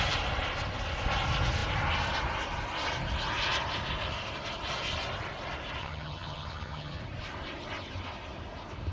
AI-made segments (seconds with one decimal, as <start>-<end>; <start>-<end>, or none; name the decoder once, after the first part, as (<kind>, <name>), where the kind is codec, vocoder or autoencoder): 5.8-7.0 (vocoder, HiFi-GAN)